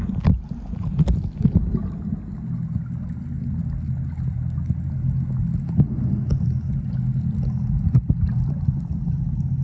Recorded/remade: recorded